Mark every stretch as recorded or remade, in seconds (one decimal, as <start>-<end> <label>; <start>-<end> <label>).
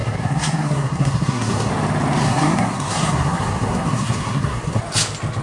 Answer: 0.0-1.7 remade; 1.7-2.2 recorded; 2.2-4.8 remade; 4.8-5.4 recorded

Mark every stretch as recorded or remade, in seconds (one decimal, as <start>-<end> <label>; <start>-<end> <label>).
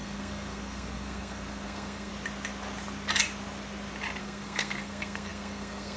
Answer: 0.0-2.1 remade; 2.1-4.2 recorded; 4.2-6.0 remade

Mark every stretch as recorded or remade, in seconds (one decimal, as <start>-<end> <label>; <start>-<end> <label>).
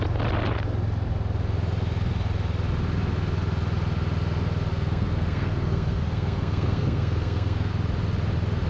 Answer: 0.0-4.7 recorded; 4.7-7.7 remade; 7.7-8.7 recorded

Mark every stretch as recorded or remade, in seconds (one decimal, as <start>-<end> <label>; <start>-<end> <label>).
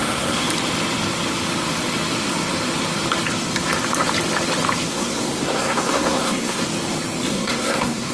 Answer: 0.0-0.5 remade; 0.5-4.9 recorded; 4.9-6.6 remade; 6.6-7.3 recorded; 7.3-8.1 remade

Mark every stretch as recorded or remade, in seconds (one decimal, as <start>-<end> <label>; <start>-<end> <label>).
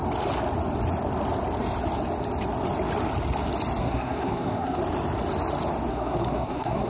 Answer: 0.0-3.8 recorded; 3.8-4.8 remade; 4.8-5.9 recorded; 5.9-6.9 remade